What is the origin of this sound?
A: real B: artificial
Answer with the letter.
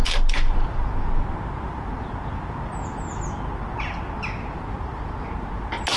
A